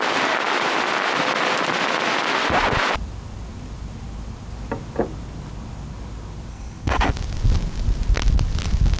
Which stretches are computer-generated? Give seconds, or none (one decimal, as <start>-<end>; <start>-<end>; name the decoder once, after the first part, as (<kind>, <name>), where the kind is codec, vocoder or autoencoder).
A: 6.5-7.1 (codec, SNAC)